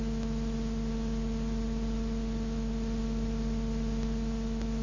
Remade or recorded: recorded